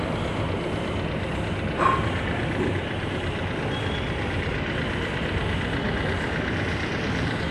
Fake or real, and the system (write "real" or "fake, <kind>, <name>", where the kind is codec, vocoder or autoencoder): real